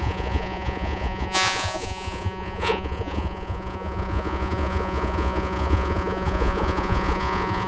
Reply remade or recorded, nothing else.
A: remade